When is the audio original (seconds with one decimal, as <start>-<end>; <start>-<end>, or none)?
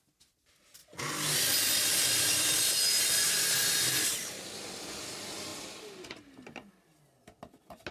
0.0-7.9